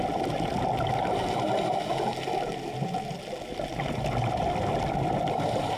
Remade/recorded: recorded